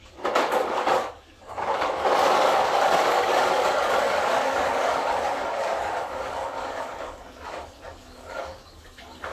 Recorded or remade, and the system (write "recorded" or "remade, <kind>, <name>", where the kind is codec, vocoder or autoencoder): remade, codec, DAC